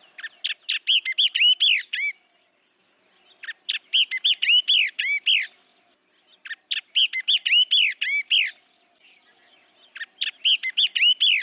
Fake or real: real